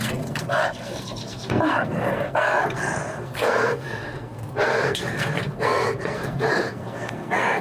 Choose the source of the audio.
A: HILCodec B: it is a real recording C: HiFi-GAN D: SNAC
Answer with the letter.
D